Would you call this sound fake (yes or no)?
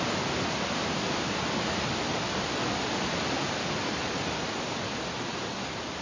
no